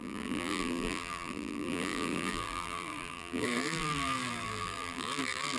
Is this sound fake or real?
fake